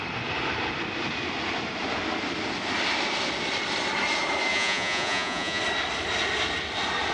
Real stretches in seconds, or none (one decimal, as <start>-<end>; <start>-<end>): 0.0-4.5; 5.6-7.1